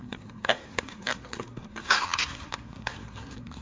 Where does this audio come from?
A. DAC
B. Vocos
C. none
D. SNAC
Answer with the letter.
D